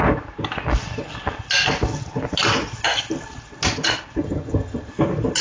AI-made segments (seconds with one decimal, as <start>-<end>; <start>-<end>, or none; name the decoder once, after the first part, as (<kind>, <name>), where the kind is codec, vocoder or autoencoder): 4.2-4.9 (vocoder, HiFi-GAN)